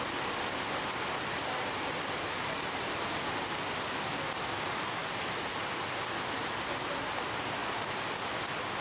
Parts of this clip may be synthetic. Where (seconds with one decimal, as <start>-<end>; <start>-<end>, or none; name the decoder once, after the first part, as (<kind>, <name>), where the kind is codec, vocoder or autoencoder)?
none